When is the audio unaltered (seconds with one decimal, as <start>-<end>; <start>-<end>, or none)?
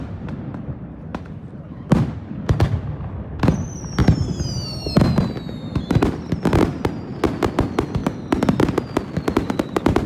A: 0.0-10.1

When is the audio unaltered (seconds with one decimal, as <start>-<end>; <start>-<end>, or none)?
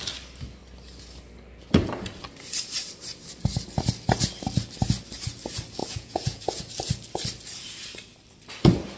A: 0.0-5.8; 6.6-9.0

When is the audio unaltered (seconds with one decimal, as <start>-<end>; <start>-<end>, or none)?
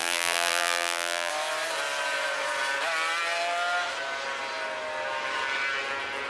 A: 1.3-6.3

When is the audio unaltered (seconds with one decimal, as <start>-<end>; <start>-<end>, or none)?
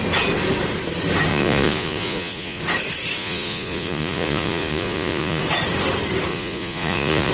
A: 0.0-1.3; 2.6-3.2; 5.4-6.3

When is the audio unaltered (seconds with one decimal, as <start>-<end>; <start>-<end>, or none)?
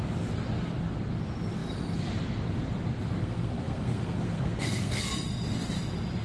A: 0.0-3.2; 5.1-6.2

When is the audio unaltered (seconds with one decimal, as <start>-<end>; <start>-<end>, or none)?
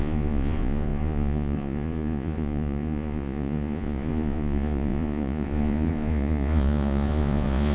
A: none